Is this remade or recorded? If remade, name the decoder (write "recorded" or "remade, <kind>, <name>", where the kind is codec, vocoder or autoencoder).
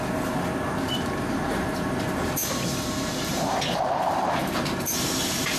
remade, vocoder, BigVGAN v2